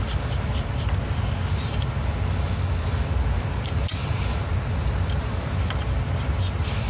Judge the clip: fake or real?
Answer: real